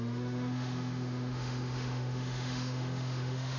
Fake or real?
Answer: fake